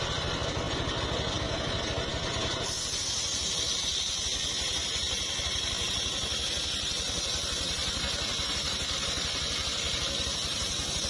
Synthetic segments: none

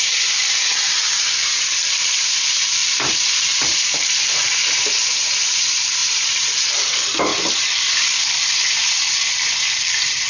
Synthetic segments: 0.0-7.3 (vocoder, BigVGAN v2); 8.2-10.3

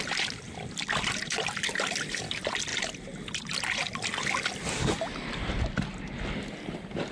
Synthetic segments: none

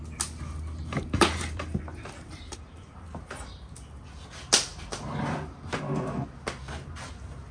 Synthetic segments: 0.8-3.6 (vocoder, BigVGAN v2)

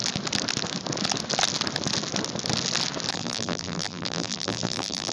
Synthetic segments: 3.1-5.1 (vocoder, BigVGAN v2)

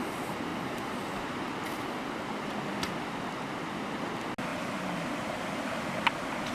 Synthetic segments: 0.5-1.5 (vocoder, BigVGAN v2); 4.5-5.2

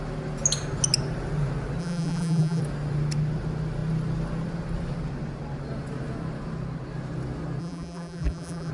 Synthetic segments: 1.8-2.6 (vocoder, BigVGAN v2); 7.6-8.7

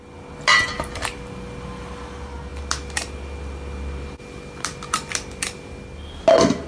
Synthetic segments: none